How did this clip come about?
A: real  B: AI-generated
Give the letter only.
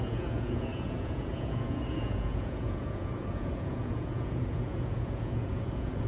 B